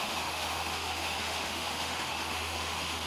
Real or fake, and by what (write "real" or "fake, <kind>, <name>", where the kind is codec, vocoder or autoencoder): fake, autoencoder, DAC-VAE